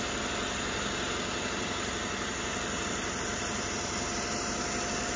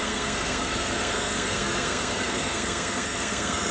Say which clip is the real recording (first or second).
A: first